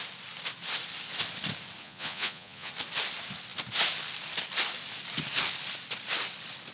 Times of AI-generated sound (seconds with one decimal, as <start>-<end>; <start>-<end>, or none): 1.8-2.7